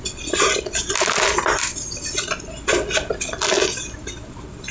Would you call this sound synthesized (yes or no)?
no